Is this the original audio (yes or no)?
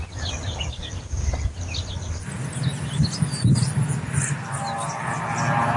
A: yes